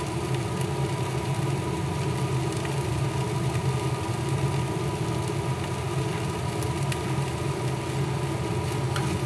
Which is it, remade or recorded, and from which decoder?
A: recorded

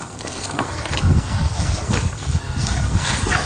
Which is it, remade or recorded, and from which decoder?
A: remade, codec, SNAC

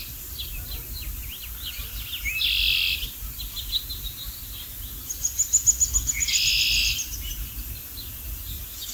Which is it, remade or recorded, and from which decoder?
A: recorded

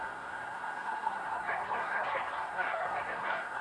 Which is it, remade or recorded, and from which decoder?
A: remade, codec, SNAC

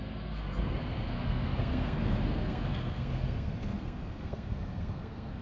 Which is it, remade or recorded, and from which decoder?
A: remade, codec, SNAC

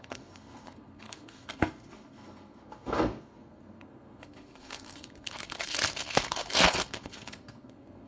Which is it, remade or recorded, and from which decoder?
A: remade, codec, SNAC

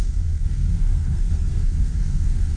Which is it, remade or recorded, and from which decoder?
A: remade, codec, SNAC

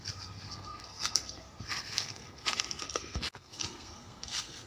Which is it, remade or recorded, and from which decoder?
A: remade, codec, SNAC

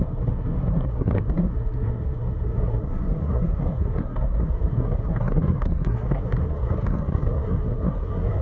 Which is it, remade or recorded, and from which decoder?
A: remade, codec, SNAC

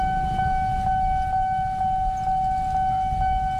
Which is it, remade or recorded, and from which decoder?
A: recorded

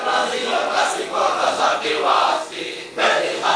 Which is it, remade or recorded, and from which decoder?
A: remade, codec, SNAC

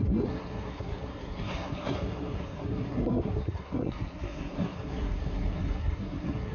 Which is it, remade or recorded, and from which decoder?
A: remade, codec, SNAC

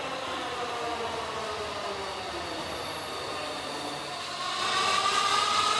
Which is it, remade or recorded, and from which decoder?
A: recorded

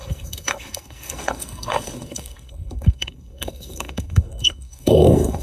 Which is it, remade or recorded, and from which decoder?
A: remade, codec, SNAC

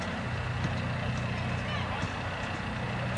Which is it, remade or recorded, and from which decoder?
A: recorded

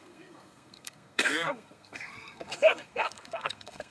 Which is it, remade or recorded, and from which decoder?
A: remade, codec, SNAC